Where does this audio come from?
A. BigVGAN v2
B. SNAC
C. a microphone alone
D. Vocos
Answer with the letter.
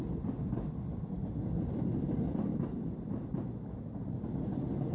C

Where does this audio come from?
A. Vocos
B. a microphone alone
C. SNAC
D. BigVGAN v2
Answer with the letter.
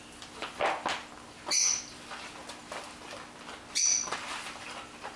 B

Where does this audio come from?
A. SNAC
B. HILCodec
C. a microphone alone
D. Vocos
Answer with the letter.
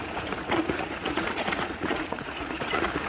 D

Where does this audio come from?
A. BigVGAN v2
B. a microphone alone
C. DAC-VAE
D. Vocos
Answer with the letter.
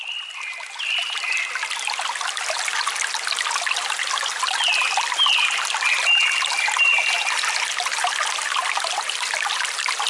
B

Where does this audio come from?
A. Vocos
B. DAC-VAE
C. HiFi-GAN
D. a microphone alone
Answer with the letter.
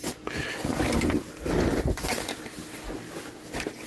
D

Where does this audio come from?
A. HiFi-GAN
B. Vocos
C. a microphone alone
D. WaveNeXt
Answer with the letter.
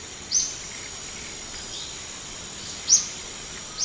C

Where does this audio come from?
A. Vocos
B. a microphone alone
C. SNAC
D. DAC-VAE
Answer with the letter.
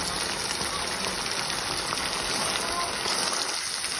B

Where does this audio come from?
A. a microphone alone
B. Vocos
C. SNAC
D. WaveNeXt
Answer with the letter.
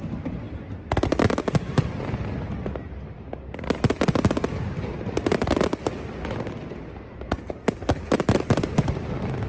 A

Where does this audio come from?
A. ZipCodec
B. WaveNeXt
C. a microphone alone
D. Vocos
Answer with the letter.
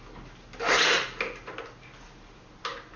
C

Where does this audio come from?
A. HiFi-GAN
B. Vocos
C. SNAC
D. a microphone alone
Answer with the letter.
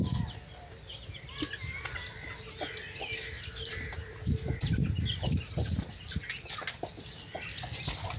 D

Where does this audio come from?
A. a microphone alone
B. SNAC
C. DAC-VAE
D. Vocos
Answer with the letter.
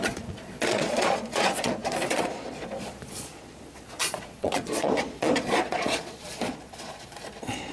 D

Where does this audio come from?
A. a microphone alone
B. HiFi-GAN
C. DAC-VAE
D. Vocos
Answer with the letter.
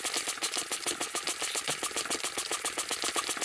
A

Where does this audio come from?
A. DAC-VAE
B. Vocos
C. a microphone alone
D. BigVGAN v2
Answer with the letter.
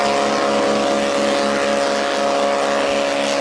C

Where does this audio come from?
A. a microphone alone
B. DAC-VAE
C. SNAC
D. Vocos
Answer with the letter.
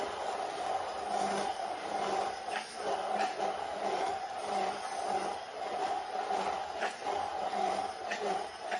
A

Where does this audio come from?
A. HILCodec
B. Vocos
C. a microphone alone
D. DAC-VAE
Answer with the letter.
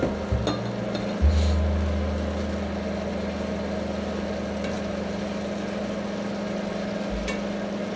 C